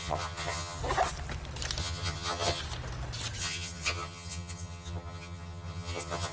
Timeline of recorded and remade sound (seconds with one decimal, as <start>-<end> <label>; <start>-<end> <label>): 0.0-0.8 remade; 0.8-1.8 recorded; 1.8-2.6 remade; 2.6-3.4 recorded; 3.4-6.3 remade